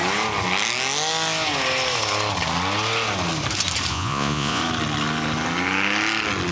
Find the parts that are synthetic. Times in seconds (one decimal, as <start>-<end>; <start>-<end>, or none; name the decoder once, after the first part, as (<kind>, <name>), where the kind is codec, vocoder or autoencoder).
3.9-4.6 (vocoder, Vocos)